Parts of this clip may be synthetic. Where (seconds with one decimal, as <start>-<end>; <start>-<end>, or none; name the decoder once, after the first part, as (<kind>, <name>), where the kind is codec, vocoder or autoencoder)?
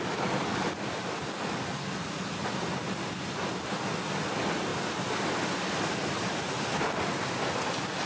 none